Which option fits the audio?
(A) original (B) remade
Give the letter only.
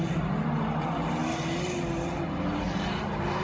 A